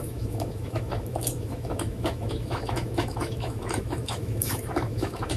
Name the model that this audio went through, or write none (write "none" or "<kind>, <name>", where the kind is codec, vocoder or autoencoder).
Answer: autoencoder, DAC-VAE